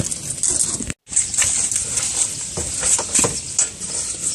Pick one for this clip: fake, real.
real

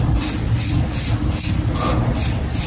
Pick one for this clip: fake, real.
real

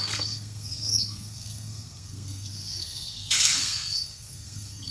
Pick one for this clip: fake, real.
fake